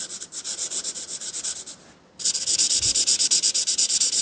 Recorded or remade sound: recorded